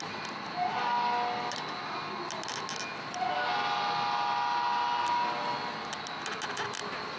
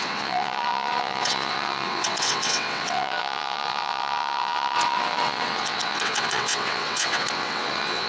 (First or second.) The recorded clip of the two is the first